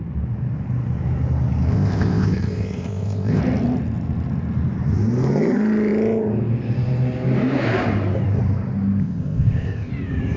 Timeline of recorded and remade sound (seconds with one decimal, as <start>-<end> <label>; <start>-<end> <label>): 0.0-1.7 recorded; 1.7-3.4 remade; 3.4-9.0 recorded; 9.0-9.9 remade; 9.9-10.4 recorded